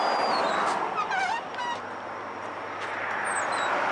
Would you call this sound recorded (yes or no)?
yes